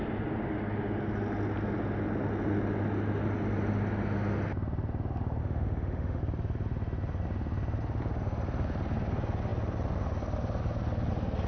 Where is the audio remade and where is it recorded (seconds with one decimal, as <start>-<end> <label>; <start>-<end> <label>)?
0.0-5.4 recorded; 5.4-6.2 remade; 6.2-11.5 recorded